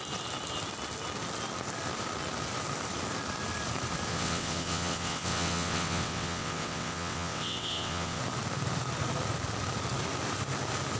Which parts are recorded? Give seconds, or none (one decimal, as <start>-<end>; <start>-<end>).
0.0-4.1; 8.2-11.0